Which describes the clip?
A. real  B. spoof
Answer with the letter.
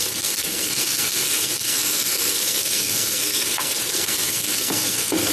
B